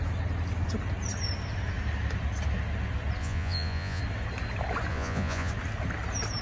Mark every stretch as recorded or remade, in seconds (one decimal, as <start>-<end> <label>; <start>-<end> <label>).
0.0-3.2 recorded; 3.2-4.0 remade; 4.0-4.9 recorded; 4.9-5.5 remade; 5.5-6.4 recorded